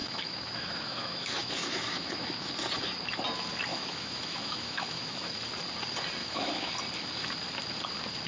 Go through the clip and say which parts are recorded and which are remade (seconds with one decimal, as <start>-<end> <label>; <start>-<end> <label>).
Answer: 0.0-2.5 remade; 2.5-3.7 recorded; 3.7-5.4 remade; 5.4-6.2 recorded; 6.2-6.7 remade; 6.7-8.3 recorded